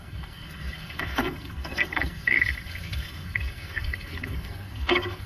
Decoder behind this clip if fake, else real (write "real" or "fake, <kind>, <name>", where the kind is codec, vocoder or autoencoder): fake, codec, SNAC